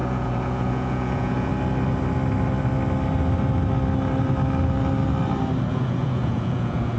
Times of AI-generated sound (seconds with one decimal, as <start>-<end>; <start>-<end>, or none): 0.0-1.5; 5.7-7.0